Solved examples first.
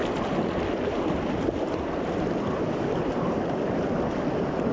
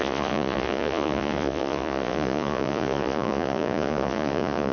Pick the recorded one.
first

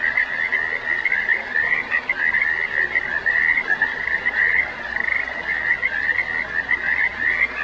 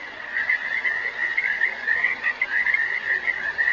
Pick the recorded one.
first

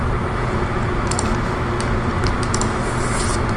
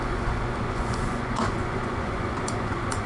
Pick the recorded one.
first